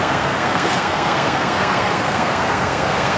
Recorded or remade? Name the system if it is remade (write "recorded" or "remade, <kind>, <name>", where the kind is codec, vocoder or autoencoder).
remade, codec, SNAC